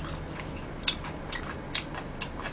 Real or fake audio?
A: real